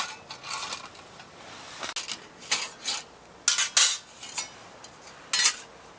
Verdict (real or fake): real